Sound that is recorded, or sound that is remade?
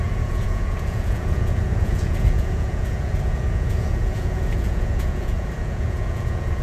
remade